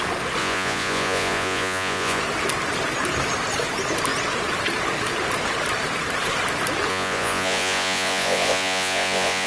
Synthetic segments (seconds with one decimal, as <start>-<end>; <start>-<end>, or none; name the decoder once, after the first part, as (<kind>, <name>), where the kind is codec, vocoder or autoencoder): 0.4-2.2 (vocoder, Vocos); 6.9-9.5